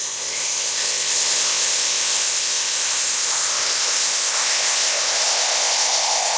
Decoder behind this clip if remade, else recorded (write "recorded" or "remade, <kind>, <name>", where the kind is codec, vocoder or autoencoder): remade, codec, ZipCodec